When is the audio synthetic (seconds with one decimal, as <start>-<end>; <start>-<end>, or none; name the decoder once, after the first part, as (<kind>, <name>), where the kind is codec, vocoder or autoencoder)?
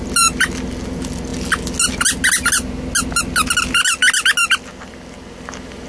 none